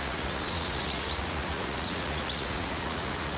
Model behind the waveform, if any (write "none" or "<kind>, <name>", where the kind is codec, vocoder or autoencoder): vocoder, Vocos